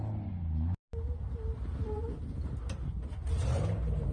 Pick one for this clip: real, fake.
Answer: real